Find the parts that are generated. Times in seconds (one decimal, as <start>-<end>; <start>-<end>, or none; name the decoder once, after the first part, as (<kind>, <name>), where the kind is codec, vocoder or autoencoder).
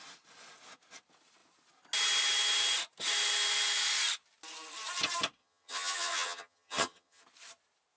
5.4-7.2 (vocoder, HiFi-GAN)